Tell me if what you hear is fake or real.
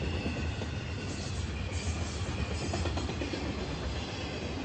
real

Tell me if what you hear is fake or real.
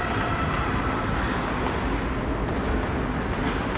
real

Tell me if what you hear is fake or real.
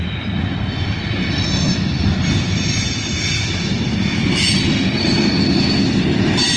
real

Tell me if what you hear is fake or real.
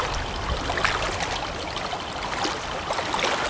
real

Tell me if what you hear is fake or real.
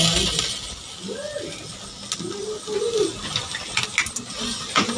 real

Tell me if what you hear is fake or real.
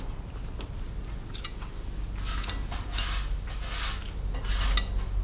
real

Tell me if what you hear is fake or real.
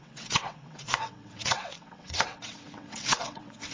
fake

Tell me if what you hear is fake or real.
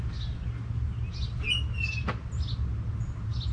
real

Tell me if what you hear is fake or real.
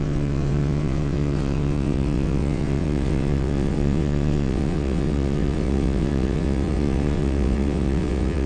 fake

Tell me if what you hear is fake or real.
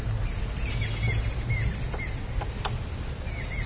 real